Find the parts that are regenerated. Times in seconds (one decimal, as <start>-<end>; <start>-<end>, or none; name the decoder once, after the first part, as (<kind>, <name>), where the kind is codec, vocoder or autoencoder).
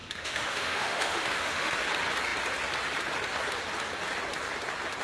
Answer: 0.0-1.7 (autoencoder, DAC-VAE)